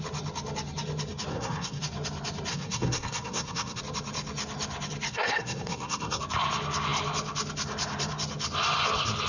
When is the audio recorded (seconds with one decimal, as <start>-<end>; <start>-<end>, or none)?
0.0-1.3; 1.8-2.5; 3.8-5.1; 6.2-9.3